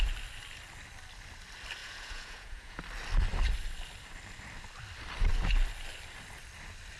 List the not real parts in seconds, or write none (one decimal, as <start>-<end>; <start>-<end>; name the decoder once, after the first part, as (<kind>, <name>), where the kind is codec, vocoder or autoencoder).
1.8-2.8 (vocoder, Vocos)